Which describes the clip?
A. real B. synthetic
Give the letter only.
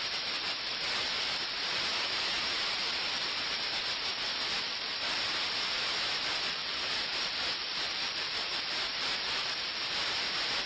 B